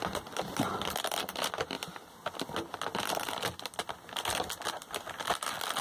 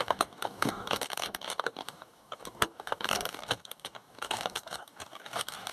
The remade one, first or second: second